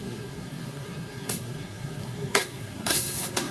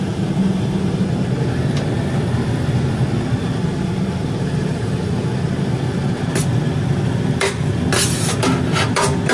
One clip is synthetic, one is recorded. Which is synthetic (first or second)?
first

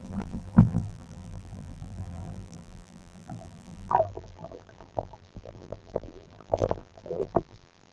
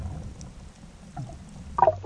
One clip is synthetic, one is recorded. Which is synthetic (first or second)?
first